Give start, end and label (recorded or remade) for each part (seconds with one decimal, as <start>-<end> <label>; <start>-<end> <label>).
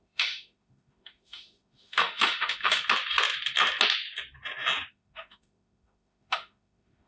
0.0-2.8 remade; 2.8-4.9 recorded; 4.9-7.1 remade